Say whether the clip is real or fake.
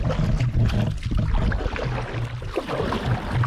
real